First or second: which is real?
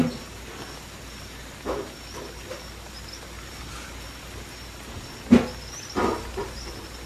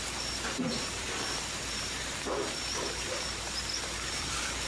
first